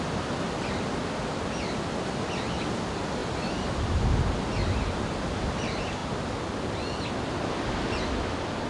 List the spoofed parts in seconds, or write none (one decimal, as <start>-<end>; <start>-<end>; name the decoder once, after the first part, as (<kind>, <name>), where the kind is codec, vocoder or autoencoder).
none